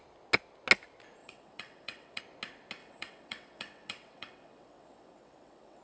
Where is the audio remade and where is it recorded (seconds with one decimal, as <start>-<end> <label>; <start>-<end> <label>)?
0.0-1.2 recorded; 1.2-2.2 remade; 2.2-2.8 recorded; 2.8-5.8 remade